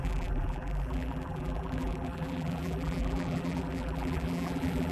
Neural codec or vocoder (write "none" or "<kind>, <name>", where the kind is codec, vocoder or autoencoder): vocoder, BigVGAN v2